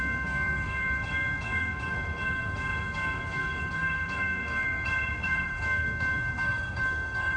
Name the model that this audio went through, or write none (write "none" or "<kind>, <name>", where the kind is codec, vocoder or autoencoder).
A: codec, SNAC